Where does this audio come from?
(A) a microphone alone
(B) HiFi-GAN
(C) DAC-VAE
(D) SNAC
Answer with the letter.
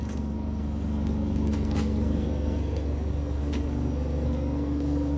D